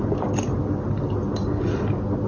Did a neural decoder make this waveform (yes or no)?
no